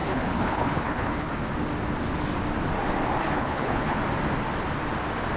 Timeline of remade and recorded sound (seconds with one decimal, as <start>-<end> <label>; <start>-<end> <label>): 0.0-1.3 remade; 1.3-3.2 recorded; 3.2-4.0 remade; 4.0-5.4 recorded